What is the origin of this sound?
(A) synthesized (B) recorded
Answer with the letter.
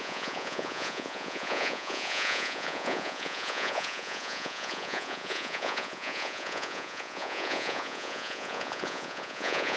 A